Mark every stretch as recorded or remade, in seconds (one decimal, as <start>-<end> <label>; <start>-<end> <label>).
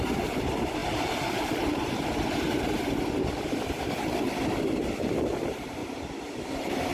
0.0-6.9 recorded